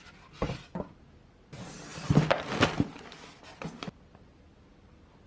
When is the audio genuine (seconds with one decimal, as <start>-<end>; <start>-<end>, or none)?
0.0-5.3